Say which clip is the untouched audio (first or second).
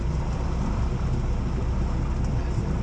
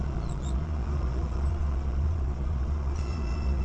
first